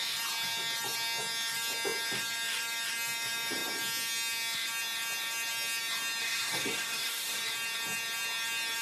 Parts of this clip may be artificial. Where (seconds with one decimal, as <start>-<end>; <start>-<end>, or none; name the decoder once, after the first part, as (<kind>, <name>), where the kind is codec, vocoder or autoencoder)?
6.2-7.4 (codec, DAC)